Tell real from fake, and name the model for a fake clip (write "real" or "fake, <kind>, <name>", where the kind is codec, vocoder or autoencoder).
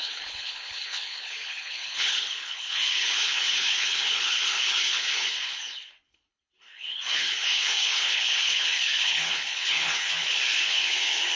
fake, codec, HILCodec